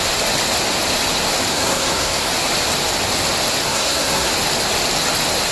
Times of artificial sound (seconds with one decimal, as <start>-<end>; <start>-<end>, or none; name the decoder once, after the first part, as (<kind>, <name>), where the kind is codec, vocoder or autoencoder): 1.5-2.3 (codec, SNAC); 3.7-4.3